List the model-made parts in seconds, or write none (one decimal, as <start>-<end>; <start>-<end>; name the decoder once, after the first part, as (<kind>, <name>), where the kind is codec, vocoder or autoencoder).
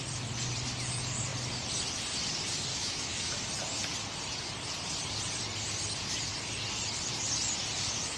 2.7-3.5 (autoencoder, DAC-VAE)